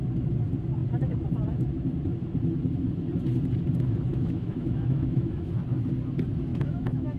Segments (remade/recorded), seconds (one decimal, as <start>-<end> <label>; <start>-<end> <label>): 0.0-4.1 recorded; 4.1-5.5 remade; 5.5-6.5 recorded; 6.5-7.2 remade